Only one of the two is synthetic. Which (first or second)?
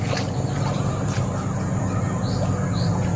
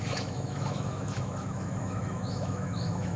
second